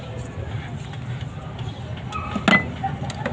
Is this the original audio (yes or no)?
yes